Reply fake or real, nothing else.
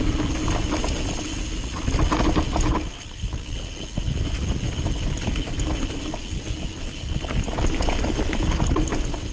real